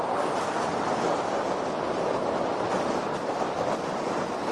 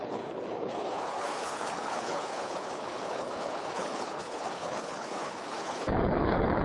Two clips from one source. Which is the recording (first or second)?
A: first